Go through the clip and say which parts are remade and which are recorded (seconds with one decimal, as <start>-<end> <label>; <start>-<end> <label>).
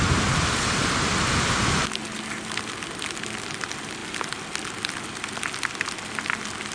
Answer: 0.0-6.7 recorded